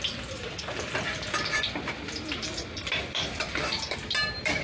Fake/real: real